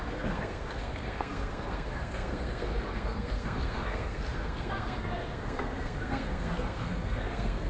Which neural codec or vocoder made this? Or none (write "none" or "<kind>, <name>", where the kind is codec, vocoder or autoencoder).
codec, SNAC